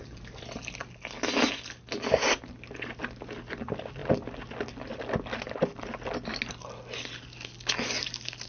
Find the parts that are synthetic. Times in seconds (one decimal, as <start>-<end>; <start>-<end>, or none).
none

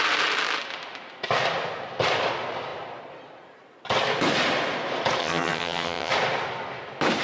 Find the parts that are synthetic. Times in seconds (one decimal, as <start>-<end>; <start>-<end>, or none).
5.2-6.1

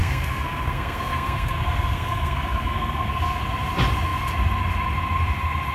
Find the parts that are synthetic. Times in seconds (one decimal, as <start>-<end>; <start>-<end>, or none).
0.0-3.4

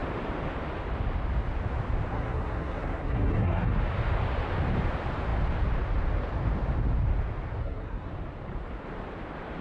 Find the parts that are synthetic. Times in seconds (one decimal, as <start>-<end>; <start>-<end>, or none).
2.1-3.7; 7.6-8.1

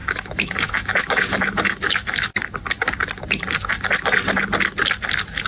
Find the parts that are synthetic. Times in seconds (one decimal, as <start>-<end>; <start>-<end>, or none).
0.0-2.3